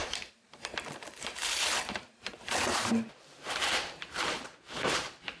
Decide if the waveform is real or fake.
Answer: fake